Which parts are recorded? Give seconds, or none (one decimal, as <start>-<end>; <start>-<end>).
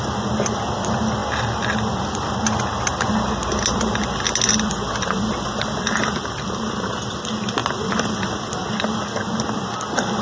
0.0-10.2